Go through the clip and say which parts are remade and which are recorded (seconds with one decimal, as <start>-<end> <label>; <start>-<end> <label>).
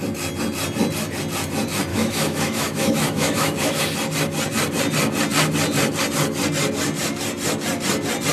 0.0-1.9 recorded; 1.9-3.8 remade; 3.8-8.3 recorded